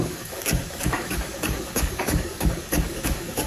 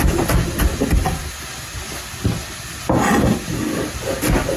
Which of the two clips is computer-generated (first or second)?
first